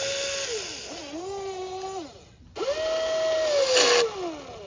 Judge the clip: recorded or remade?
recorded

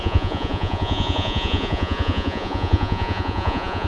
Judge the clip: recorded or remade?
remade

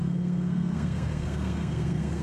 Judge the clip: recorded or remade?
remade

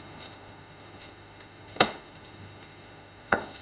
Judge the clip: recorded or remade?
remade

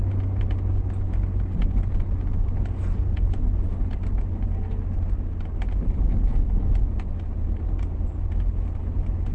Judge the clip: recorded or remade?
recorded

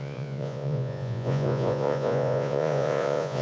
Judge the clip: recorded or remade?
remade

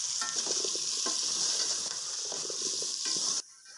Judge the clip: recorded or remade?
recorded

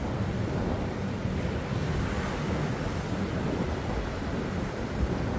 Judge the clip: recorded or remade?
recorded